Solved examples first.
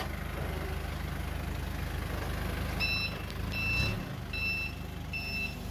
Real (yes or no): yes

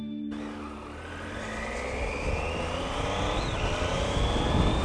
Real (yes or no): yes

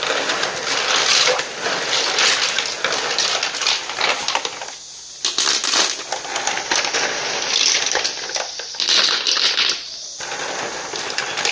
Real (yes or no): yes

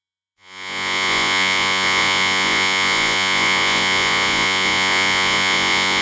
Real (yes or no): no